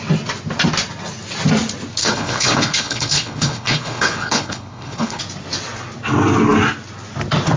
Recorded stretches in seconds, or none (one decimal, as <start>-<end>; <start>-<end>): 0.0-2.0; 5.2-7.6